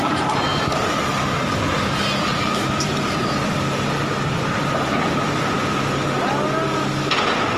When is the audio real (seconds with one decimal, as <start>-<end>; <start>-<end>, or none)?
0.0-7.6